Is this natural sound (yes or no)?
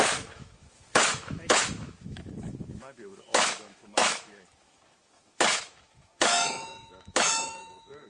no